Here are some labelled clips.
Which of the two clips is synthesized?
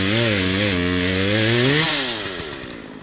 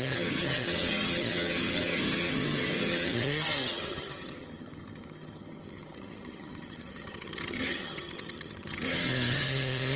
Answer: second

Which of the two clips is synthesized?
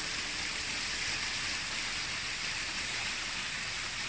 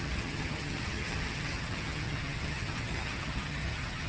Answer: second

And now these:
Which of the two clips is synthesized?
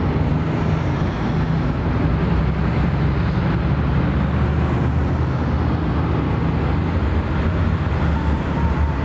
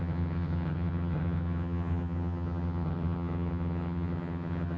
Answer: second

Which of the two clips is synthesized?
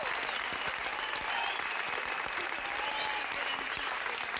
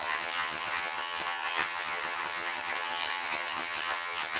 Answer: second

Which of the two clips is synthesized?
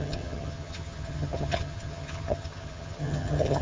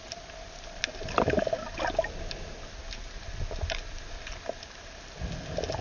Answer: first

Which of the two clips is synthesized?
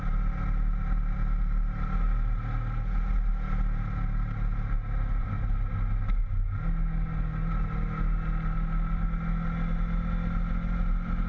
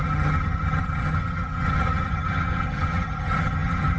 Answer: second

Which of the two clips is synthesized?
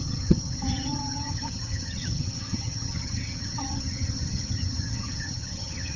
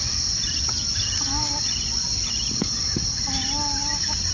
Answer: first